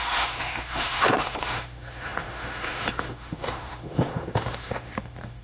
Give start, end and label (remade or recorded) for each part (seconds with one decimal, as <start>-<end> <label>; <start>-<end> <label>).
0.0-5.4 remade